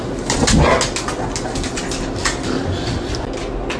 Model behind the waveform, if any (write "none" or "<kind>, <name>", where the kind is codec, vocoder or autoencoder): none